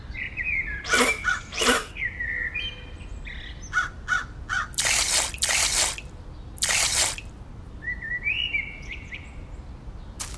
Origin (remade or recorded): recorded